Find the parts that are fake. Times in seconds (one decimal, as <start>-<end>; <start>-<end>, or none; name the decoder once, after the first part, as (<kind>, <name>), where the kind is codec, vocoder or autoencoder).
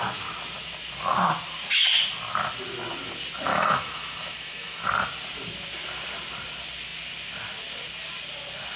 3.5-4.9 (autoencoder, DAC-VAE)